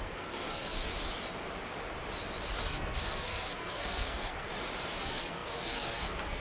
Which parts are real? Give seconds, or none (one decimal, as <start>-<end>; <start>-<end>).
0.9-2.6; 4.5-5.0